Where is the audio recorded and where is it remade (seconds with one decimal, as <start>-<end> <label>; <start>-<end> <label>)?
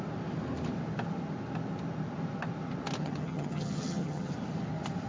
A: 0.0-3.0 recorded; 3.0-4.3 remade; 4.3-5.1 recorded